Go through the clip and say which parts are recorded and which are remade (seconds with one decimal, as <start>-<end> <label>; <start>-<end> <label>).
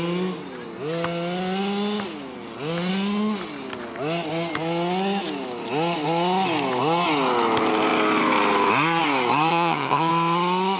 0.0-9.5 recorded; 9.5-10.1 remade; 10.1-10.8 recorded